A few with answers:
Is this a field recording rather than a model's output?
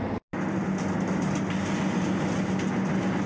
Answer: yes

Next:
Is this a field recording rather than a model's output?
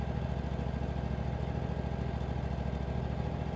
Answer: yes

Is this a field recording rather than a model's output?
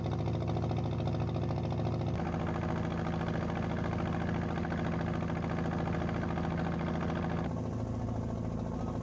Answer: yes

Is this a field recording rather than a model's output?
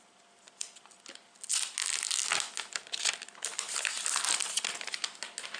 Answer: yes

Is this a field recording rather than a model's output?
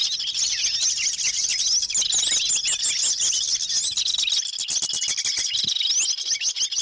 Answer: yes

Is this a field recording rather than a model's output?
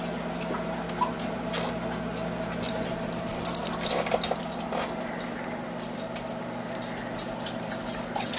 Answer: yes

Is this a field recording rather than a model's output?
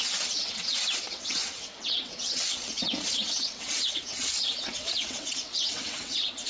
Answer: no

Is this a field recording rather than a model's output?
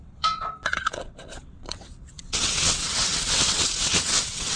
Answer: no